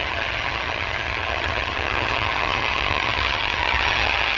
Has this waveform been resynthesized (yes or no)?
yes